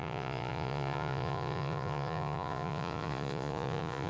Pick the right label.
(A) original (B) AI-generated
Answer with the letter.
B